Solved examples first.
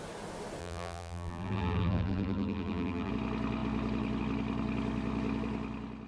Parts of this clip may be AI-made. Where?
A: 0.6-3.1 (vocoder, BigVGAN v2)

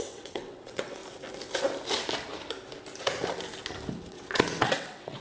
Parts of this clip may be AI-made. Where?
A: 0.0-1.0 (vocoder, WaveNeXt); 4.1-5.2

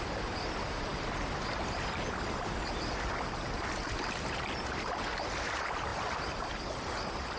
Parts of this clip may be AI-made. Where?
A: none